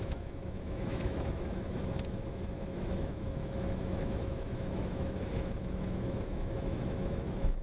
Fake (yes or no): yes